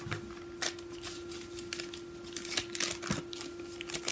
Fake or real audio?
real